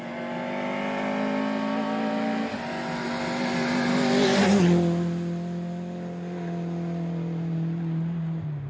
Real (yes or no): yes